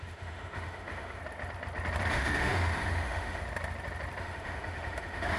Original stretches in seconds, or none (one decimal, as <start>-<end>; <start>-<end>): 1.2-2.1; 3.4-4.2